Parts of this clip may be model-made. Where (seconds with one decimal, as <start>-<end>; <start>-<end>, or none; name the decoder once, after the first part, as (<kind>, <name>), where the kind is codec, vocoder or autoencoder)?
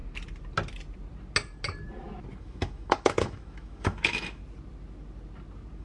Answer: 2.4-4.4 (autoencoder, DAC-VAE)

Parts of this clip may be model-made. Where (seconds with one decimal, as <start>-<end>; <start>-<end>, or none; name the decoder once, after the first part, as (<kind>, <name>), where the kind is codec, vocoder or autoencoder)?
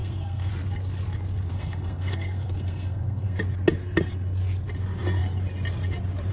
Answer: 0.0-0.5 (codec, SNAC); 1.5-3.4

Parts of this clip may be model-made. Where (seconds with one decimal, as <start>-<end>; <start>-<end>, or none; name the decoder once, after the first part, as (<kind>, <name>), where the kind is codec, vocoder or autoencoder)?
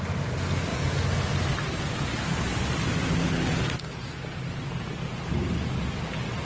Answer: none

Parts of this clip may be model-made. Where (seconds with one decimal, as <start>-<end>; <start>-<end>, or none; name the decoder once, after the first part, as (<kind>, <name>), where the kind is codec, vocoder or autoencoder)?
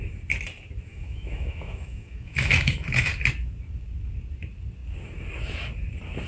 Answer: 0.9-3.1 (autoencoder, DAC-VAE)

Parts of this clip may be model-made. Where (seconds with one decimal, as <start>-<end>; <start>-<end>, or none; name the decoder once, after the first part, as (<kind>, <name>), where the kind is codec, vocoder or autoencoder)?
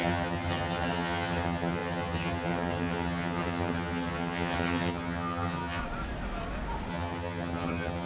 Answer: 0.0-5.8 (vocoder, HiFi-GAN); 6.9-8.1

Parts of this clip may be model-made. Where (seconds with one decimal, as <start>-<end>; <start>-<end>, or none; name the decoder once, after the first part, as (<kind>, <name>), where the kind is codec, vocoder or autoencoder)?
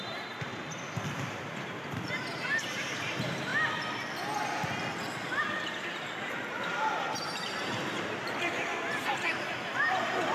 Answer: 0.0-0.5 (vocoder, BigVGAN v2); 1.5-3.5; 5.4-10.3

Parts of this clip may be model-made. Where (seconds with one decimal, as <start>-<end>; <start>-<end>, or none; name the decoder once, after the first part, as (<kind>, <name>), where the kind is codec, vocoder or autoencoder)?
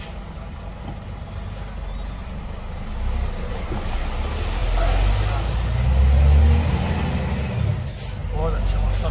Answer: none